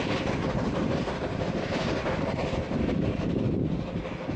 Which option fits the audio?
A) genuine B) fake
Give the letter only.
A